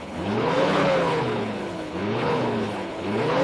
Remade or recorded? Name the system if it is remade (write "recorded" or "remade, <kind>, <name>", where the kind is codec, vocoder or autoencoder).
remade, codec, HILCodec